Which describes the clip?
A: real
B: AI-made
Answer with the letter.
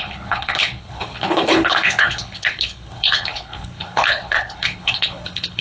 B